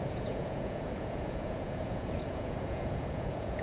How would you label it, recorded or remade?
remade